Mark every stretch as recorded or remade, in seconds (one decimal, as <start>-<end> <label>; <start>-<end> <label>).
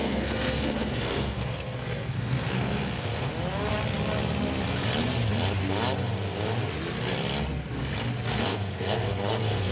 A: 0.0-3.3 remade; 3.3-8.3 recorded; 8.3-9.7 remade